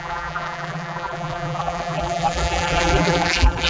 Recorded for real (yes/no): no